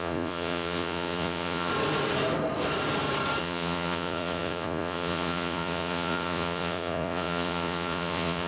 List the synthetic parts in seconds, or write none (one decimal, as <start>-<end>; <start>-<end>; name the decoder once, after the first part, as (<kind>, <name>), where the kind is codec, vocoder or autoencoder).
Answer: 0.0-1.7 (vocoder, Vocos); 3.4-8.5

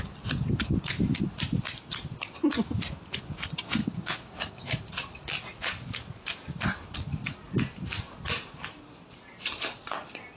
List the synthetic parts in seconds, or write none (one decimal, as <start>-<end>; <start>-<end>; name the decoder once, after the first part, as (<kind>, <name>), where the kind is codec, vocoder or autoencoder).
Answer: 3.8-4.9 (codec, DAC)